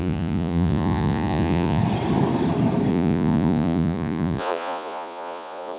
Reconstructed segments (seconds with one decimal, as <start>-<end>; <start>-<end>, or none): 0.0-1.8; 2.9-5.8

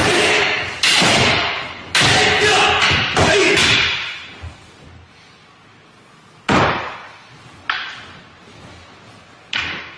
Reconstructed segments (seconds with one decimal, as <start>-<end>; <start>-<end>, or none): none

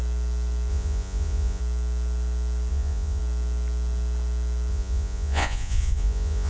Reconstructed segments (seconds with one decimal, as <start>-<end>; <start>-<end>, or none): 0.7-1.6; 2.7-3.2; 4.7-6.5

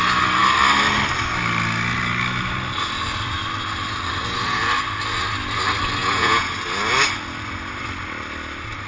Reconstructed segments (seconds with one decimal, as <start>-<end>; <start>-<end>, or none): 6.0-6.5

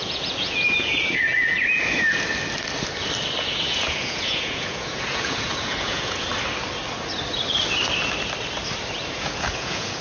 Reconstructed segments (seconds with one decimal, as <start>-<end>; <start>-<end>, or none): 0.0-1.3; 3.4-6.3; 9.1-10.0